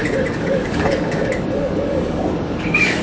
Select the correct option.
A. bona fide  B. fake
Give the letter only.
B